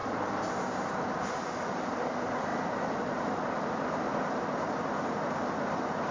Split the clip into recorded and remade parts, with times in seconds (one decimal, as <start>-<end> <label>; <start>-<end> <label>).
0.0-1.7 remade; 1.7-2.5 recorded; 2.5-4.1 remade; 4.1-6.1 recorded